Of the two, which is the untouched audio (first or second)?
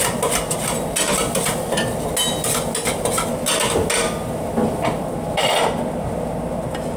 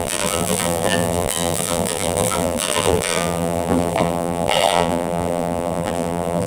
first